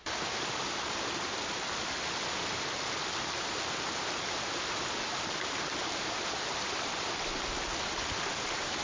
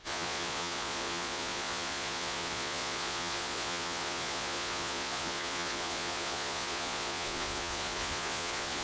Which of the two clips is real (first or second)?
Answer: first